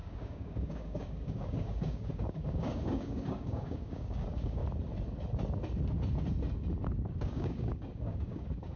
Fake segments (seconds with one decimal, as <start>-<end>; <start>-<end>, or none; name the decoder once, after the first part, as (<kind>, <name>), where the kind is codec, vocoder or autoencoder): 0.0-4.6 (codec, DAC); 7.2-8.8